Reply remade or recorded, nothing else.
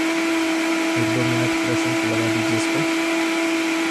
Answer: recorded